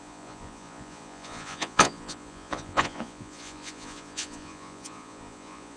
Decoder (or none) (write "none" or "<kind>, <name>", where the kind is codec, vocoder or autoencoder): vocoder, Vocos